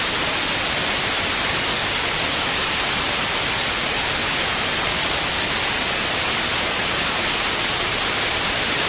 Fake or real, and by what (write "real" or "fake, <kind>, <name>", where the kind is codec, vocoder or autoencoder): real